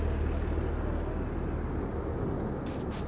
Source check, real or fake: real